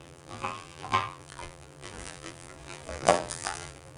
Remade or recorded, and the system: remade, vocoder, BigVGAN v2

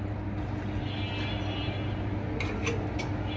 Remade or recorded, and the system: recorded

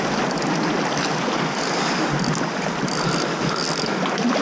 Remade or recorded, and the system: recorded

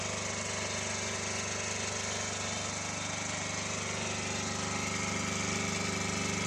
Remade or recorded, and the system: recorded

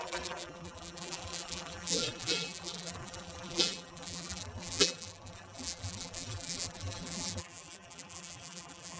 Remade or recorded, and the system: remade, vocoder, BigVGAN v2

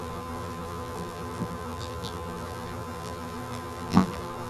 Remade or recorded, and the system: remade, vocoder, BigVGAN v2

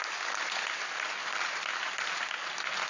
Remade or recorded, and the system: recorded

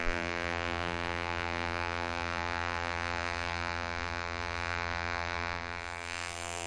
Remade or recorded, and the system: remade, vocoder, BigVGAN v2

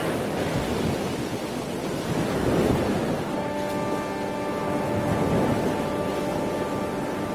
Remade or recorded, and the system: recorded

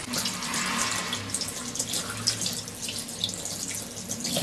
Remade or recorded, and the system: recorded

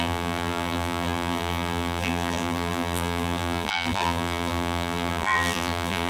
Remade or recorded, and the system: remade, vocoder, BigVGAN v2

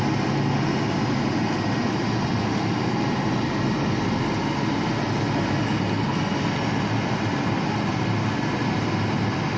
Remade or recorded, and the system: recorded